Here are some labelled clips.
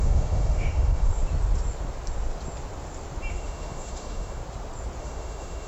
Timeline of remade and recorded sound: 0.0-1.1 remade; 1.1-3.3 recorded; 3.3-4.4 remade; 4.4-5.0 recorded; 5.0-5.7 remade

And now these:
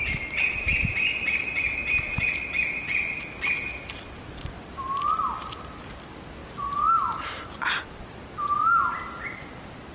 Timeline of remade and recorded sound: 0.0-9.9 recorded

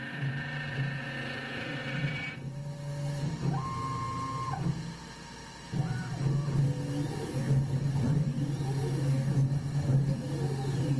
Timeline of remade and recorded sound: 0.0-5.0 recorded; 5.0-6.3 remade; 6.3-11.0 recorded

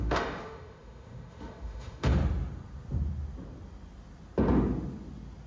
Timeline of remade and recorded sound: 0.0-2.1 remade; 2.1-5.5 recorded

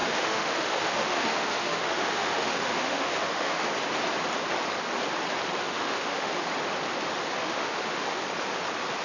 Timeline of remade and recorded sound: 0.0-3.7 remade; 3.7-5.6 recorded; 5.6-6.3 remade; 6.3-7.4 recorded; 7.4-8.2 remade; 8.2-9.0 recorded